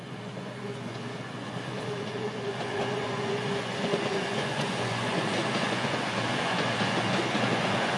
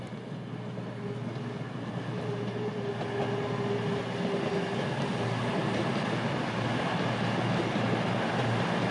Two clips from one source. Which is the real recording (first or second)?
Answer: second